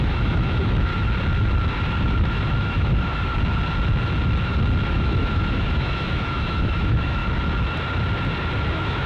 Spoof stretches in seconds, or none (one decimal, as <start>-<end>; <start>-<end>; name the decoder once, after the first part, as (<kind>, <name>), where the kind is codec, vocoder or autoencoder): 0.0-0.9 (autoencoder, DAC-VAE); 2.0-3.3; 4.9-7.2; 8.7-9.1